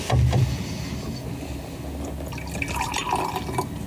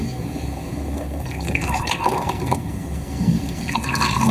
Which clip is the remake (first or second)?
second